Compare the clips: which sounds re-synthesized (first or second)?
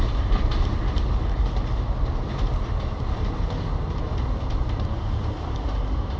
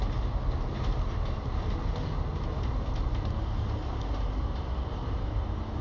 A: first